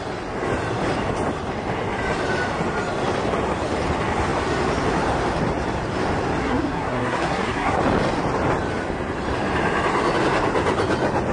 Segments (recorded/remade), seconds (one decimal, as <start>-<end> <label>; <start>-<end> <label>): 0.0-6.4 recorded; 6.4-7.8 remade; 7.8-11.3 recorded